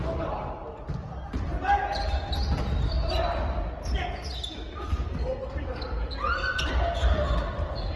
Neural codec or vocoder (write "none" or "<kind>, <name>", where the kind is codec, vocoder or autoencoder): none